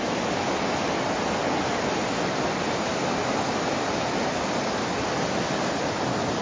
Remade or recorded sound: recorded